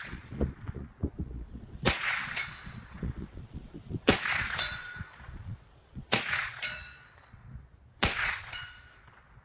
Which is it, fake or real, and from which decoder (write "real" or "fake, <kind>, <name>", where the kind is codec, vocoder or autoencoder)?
fake, vocoder, Vocos